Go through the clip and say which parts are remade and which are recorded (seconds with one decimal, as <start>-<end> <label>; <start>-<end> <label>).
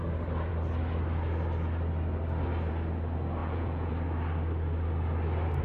0.0-3.4 recorded; 3.4-3.9 remade; 3.9-5.6 recorded